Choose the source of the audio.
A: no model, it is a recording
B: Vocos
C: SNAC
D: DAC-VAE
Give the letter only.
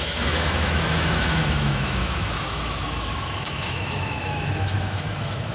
D